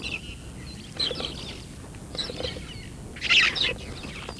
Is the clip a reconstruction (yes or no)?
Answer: no